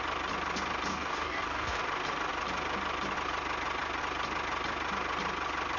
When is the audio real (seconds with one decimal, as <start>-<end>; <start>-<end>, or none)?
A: 0.0-0.9; 1.8-5.8